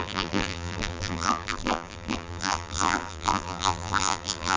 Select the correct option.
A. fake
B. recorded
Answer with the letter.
A